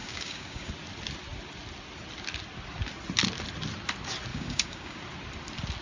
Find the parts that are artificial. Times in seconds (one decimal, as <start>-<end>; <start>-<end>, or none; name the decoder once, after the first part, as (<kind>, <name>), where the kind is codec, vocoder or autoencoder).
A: 0.0-0.7 (codec, DAC); 4.3-5.0

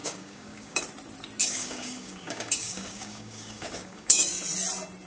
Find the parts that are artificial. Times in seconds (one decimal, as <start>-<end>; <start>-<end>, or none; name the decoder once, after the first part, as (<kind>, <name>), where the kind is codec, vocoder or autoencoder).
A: 0.0-0.8 (codec, DAC); 1.4-4.4

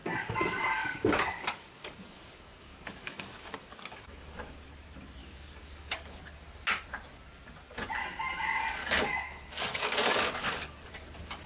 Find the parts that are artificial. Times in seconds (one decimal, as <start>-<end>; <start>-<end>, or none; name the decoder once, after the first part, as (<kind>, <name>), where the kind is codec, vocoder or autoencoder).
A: 0.0-4.7 (codec, DAC); 5.2-6.2; 8.8-10.9

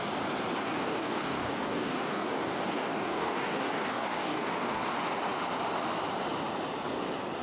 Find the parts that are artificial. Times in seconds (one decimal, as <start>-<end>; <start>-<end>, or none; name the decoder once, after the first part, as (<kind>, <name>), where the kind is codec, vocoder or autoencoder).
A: 0.6-4.8 (codec, DAC)

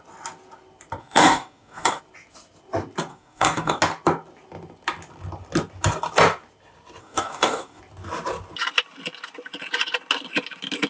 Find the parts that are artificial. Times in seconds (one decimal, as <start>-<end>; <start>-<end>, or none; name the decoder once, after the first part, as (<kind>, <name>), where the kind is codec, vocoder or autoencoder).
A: 1.0-2.0 (codec, DAC); 3.1-3.8; 7.0-7.8